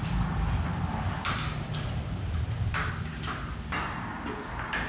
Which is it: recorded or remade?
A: recorded